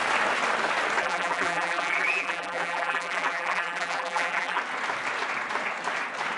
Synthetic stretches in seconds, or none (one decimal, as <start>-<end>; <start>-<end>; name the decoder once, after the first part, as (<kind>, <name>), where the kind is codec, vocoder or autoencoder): 1.0-4.6 (vocoder, BigVGAN v2)